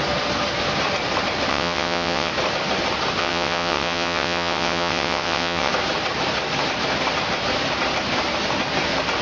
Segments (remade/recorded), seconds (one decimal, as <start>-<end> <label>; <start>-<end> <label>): 0.0-1.5 recorded; 1.5-2.3 remade; 2.3-3.2 recorded; 3.2-5.7 remade; 5.7-9.2 recorded